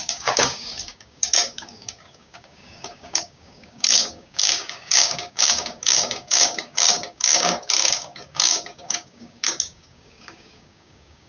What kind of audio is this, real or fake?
fake